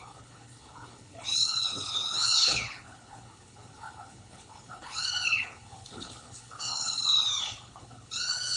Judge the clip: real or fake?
fake